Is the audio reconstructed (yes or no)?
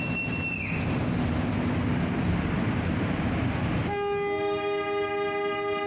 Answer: no